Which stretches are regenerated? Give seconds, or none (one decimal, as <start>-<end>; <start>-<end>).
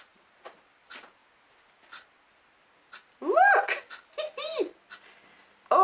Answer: none